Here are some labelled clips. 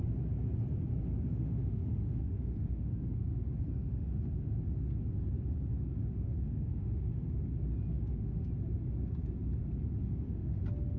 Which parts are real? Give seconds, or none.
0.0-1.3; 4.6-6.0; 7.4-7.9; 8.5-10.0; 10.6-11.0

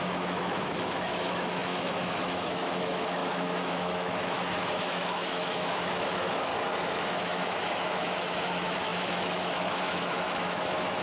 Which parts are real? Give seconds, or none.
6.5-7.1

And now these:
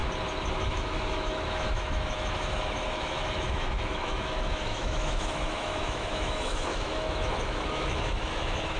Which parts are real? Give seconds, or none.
0.0-0.6